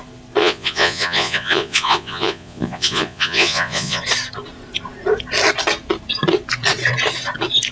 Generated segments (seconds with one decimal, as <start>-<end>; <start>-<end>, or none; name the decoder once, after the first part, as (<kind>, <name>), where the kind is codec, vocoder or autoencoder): 0.4-4.0 (vocoder, Vocos)